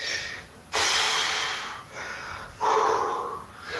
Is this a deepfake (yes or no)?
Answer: no